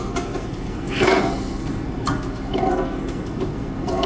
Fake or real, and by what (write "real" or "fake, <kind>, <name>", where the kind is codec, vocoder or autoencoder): fake, codec, SNAC